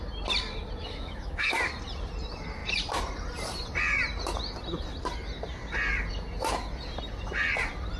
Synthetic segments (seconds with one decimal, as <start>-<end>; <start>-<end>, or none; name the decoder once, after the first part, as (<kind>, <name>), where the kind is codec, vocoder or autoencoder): 0.8-1.5 (autoencoder, DAC-VAE)